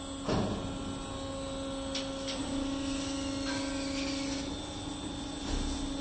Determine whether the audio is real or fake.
real